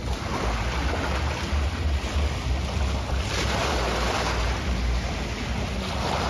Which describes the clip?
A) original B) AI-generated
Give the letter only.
A